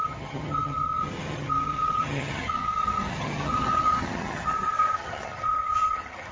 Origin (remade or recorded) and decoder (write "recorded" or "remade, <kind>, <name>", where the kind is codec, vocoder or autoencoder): remade, vocoder, HiFi-GAN